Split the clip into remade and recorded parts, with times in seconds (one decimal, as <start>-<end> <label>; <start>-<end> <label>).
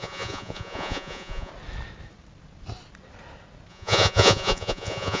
0.0-1.5 remade; 1.5-3.7 recorded; 3.7-5.2 remade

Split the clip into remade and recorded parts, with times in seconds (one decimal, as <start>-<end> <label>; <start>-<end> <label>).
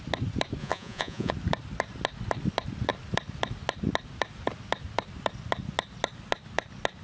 0.0-0.6 recorded; 0.6-1.3 remade; 1.3-7.0 recorded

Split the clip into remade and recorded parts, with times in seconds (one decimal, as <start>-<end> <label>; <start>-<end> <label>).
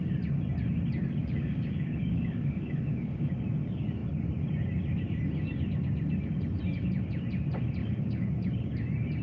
0.0-1.2 recorded; 1.2-3.3 remade; 3.3-7.8 recorded; 7.8-8.3 remade; 8.3-9.2 recorded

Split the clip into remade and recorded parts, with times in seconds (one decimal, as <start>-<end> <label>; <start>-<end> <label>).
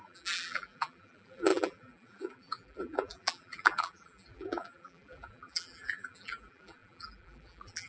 0.0-7.9 remade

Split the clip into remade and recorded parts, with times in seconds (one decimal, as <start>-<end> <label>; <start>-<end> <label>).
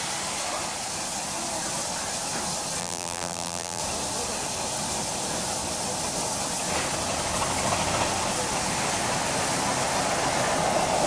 0.0-2.8 recorded; 2.8-3.8 remade; 3.8-11.1 recorded